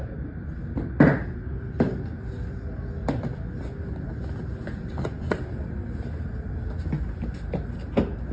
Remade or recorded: recorded